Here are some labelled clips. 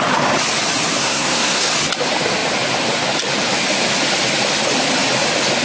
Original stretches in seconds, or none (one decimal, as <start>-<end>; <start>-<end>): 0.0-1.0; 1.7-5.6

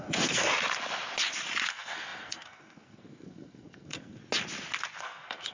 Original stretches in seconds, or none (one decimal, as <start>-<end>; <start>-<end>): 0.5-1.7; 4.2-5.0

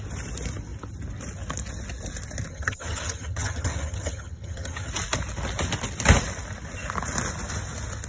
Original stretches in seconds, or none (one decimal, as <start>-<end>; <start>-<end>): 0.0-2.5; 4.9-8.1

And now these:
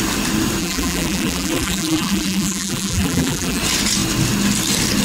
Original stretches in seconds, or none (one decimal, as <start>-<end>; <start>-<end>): 0.0-0.6; 3.6-5.0

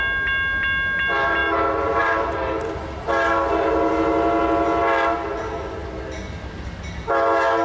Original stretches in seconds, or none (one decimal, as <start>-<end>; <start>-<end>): 0.0-7.6